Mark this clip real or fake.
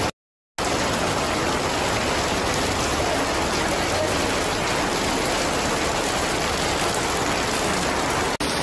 real